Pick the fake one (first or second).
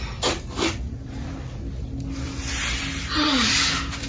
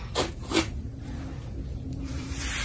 second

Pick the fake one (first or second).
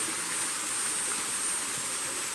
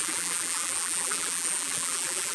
second